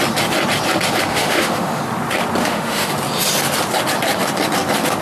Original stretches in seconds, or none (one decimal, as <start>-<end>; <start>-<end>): 0.0-1.1; 1.8-2.4; 2.9-5.0